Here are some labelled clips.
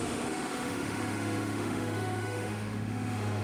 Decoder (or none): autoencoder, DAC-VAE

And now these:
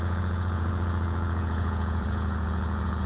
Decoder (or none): vocoder, Vocos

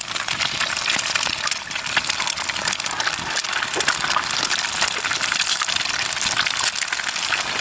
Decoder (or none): none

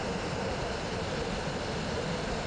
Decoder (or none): none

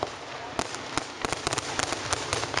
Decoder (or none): none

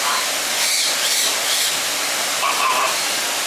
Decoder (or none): none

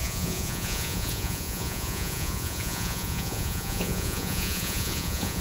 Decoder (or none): vocoder, Vocos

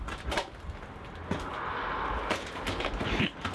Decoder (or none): none